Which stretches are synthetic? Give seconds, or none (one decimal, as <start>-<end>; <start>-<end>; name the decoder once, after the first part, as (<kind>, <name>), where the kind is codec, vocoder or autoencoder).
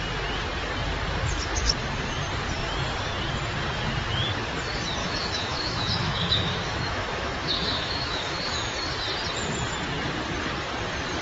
5.0-8.5 (autoencoder, DAC-VAE)